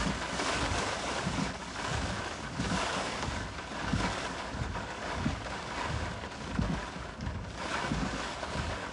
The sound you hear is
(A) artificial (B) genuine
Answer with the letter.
A